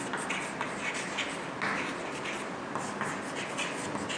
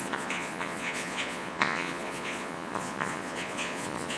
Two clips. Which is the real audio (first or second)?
first